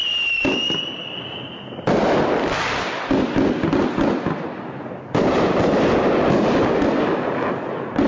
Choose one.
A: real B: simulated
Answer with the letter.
A